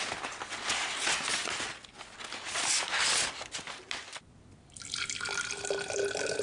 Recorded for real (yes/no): yes